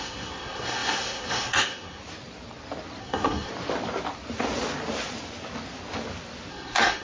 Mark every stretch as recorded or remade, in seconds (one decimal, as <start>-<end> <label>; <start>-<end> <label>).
0.0-2.0 remade; 2.0-3.0 recorded; 3.0-3.5 remade; 3.5-6.5 recorded; 6.5-7.0 remade